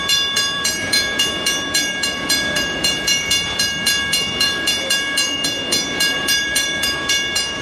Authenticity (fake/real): fake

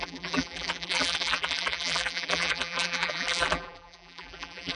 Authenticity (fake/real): fake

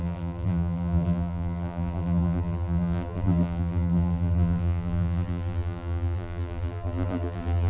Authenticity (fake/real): fake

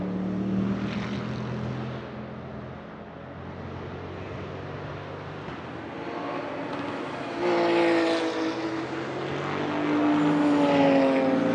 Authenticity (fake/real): real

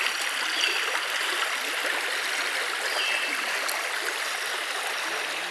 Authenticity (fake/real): real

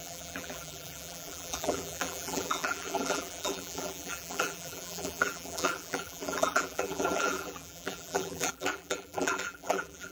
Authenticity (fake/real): fake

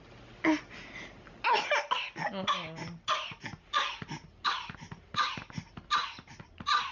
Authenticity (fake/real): real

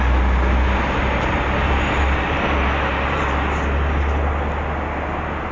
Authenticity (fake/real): real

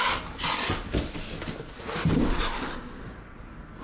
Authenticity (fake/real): real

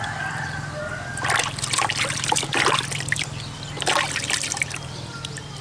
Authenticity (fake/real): fake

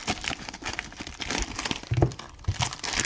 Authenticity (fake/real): fake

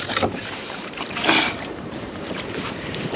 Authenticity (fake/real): fake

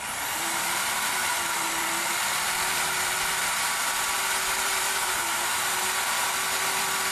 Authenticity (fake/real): fake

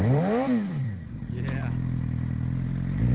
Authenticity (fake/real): fake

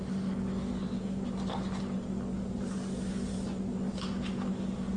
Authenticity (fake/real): real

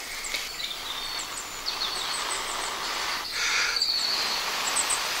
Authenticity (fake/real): real